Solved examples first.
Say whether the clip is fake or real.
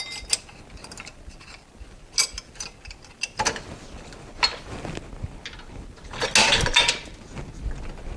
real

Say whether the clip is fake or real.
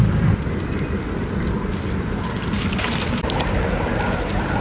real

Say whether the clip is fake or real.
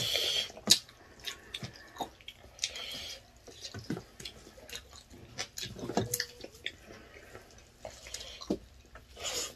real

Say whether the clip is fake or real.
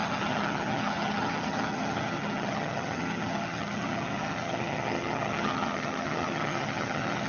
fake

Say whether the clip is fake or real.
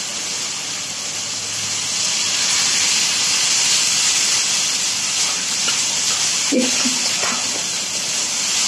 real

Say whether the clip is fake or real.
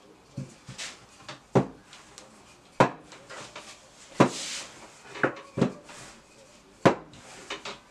real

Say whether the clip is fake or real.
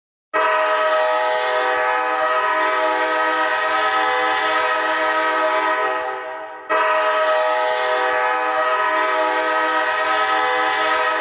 real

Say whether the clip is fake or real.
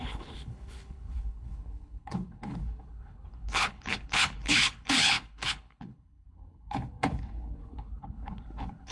fake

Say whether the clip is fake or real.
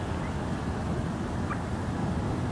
real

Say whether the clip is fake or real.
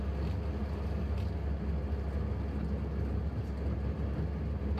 real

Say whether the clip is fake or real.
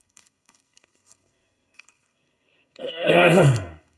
fake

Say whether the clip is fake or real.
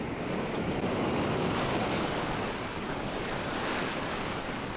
fake